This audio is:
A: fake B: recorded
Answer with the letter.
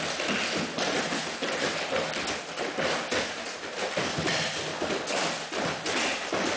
B